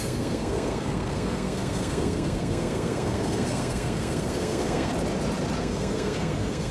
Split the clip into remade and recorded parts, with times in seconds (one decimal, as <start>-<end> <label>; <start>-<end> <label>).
0.0-4.9 remade; 4.9-5.6 recorded; 5.6-6.7 remade